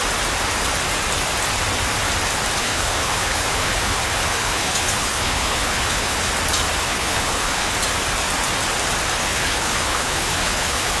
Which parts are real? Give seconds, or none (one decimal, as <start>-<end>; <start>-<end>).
0.0-2.6; 6.3-6.8; 7.7-9.2